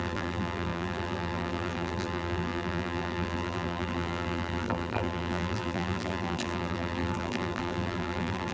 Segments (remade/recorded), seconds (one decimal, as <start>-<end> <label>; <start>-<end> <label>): 0.0-8.5 remade